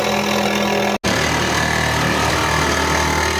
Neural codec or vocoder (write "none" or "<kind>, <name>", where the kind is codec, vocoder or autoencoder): none